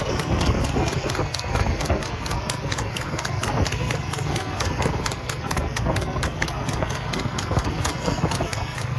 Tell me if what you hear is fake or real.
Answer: fake